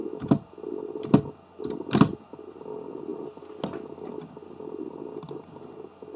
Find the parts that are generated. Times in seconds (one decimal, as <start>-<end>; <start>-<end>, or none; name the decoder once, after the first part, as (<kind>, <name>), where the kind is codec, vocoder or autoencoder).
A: none